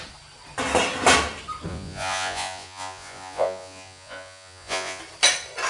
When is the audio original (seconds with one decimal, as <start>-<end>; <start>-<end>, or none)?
0.0-1.7; 5.0-5.7